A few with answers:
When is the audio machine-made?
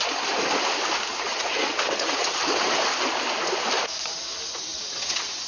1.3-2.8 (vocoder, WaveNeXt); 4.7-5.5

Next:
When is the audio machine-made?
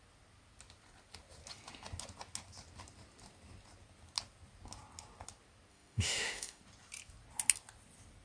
5.7-6.6 (autoencoder, DAC-VAE)